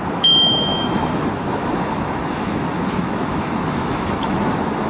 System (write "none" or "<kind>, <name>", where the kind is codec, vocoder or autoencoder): autoencoder, DAC-VAE